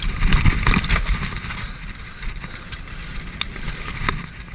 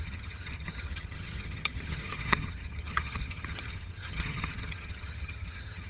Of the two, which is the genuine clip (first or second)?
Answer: first